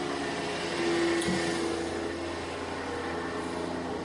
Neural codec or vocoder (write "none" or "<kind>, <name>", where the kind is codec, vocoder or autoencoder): none